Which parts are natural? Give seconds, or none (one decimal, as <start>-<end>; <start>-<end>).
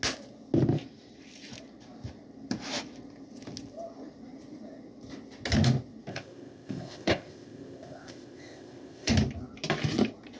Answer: 0.0-6.1; 9.1-10.4